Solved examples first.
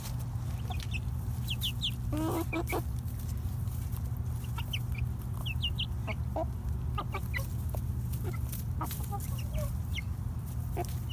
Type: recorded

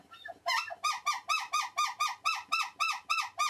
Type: recorded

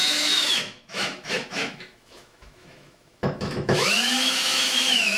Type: remade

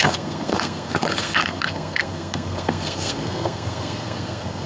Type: remade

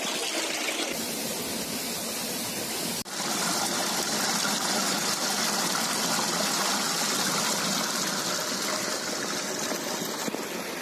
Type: recorded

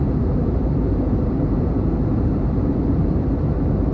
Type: remade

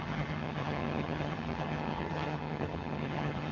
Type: remade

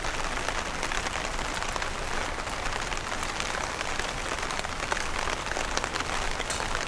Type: recorded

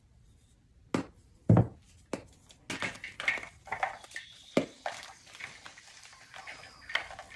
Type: recorded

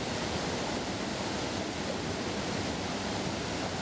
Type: recorded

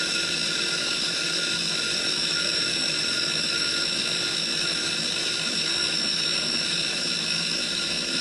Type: remade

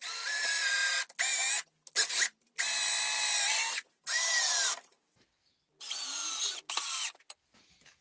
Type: recorded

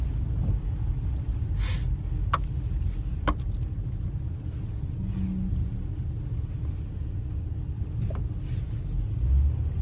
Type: recorded